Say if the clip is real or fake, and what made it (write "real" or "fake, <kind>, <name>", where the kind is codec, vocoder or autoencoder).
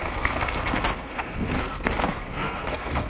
fake, codec, SNAC